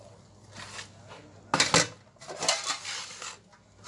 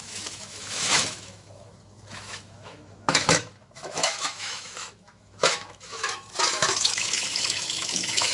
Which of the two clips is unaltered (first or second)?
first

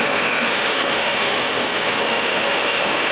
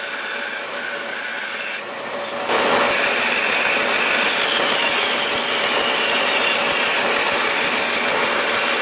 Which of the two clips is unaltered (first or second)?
second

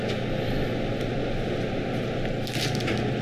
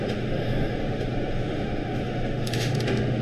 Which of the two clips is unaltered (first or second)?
first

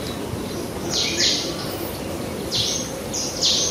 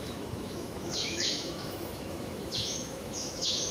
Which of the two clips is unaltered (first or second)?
first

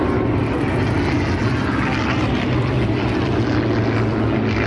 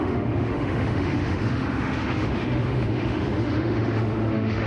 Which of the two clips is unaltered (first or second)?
first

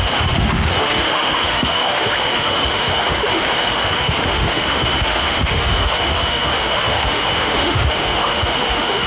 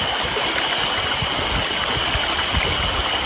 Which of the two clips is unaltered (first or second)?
second